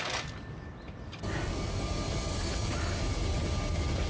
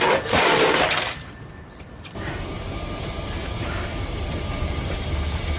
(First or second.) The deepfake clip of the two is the second